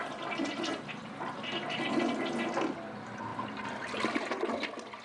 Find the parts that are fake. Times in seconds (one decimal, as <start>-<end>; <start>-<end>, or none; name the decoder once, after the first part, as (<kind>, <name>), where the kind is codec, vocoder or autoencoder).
none